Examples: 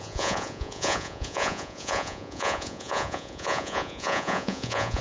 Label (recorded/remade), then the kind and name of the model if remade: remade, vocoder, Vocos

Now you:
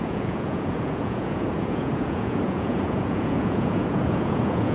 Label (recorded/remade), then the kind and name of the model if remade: remade, vocoder, Vocos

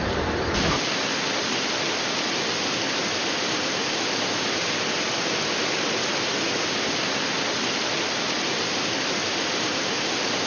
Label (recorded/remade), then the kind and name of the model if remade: recorded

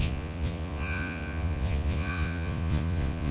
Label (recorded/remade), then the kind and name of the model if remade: remade, vocoder, Vocos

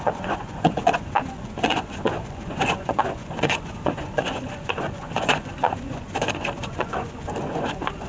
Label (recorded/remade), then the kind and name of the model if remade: remade, vocoder, Vocos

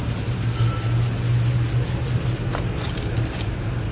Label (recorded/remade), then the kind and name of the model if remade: recorded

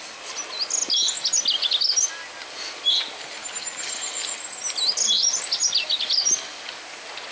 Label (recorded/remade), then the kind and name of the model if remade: recorded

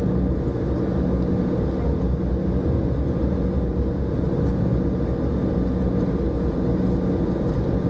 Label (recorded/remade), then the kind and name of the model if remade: recorded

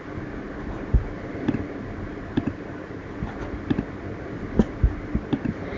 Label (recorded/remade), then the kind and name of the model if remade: recorded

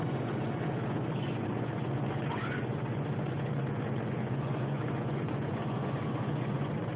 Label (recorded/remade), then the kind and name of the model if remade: remade, vocoder, Vocos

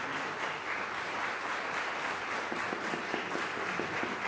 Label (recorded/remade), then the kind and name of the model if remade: recorded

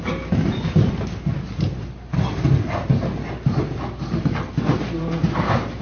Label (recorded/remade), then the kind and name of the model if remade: recorded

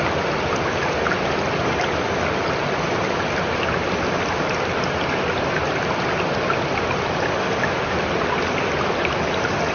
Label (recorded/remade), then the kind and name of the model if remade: recorded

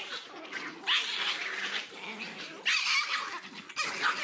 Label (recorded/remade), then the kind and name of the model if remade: recorded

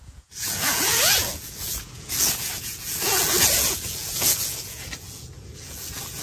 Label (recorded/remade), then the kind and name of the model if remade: remade, vocoder, Vocos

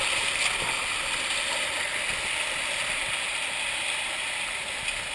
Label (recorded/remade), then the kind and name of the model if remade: recorded